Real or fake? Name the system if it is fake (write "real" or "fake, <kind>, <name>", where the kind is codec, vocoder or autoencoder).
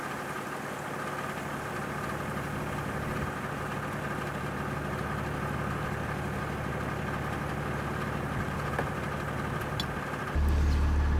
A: real